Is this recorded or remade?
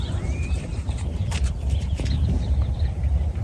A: remade